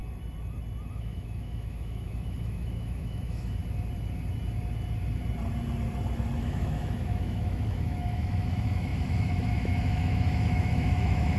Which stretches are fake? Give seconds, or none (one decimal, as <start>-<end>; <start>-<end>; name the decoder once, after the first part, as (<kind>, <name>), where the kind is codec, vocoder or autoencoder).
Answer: 0.9-3.6 (autoencoder, DAC-VAE); 6.4-11.4